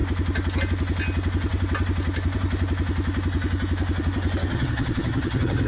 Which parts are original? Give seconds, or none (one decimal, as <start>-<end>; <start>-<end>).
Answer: 0.0-4.5